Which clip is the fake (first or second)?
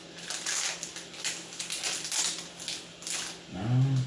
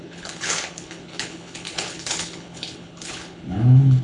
second